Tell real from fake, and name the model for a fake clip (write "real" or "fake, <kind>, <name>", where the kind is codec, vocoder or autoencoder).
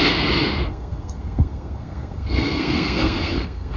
fake, codec, SNAC